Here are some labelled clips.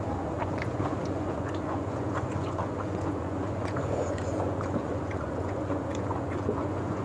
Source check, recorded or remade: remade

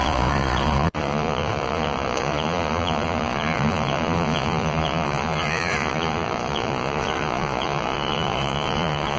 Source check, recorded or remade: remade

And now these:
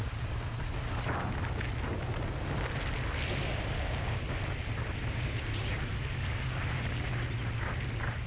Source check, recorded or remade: recorded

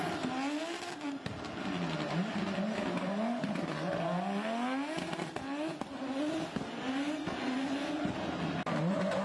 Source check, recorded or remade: recorded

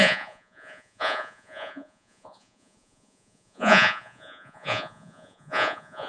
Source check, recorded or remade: remade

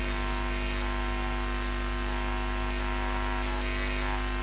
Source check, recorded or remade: recorded